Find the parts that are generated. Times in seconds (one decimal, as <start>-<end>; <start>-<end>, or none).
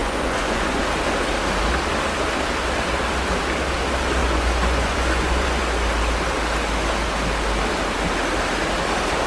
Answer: 0.0-0.8; 4.2-5.6